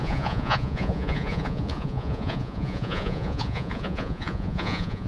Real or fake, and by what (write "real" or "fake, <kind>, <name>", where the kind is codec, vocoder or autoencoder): fake, vocoder, Vocos